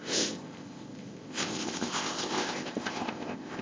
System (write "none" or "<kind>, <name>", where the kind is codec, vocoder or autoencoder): codec, ZipCodec